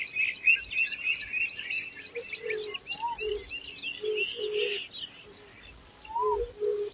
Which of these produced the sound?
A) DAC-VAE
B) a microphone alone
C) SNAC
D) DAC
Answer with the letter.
B